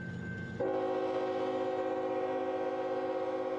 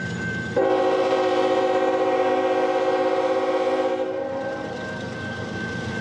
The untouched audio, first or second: first